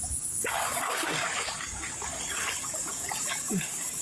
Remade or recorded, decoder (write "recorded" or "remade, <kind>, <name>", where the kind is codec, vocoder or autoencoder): remade, codec, DAC